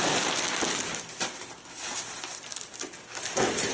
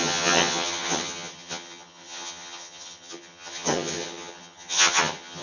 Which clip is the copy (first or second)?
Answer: second